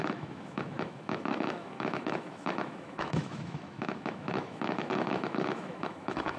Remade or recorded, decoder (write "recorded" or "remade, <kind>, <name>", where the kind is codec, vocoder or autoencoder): remade, autoencoder, DAC-VAE